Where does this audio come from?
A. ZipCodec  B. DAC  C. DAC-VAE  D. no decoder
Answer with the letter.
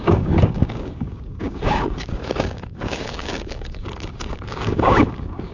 B